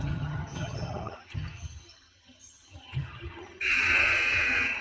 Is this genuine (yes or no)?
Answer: no